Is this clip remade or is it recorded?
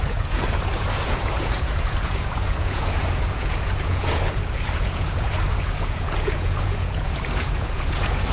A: remade